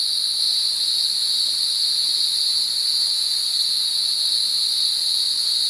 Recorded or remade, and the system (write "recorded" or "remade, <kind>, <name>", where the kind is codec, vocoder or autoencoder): recorded